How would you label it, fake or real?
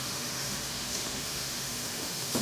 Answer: fake